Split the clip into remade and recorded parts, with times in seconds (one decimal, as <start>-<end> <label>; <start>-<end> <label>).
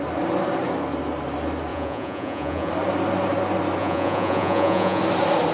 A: 0.0-1.7 recorded; 1.7-2.7 remade; 2.7-3.8 recorded; 3.8-5.0 remade; 5.0-5.5 recorded